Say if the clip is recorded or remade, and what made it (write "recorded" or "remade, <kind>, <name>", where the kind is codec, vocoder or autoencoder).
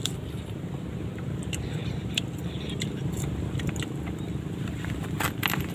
remade, vocoder, BigVGAN v2